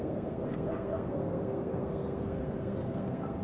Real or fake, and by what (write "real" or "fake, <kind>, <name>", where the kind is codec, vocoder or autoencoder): fake, codec, SNAC